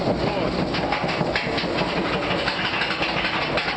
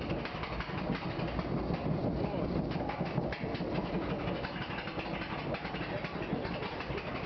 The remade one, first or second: second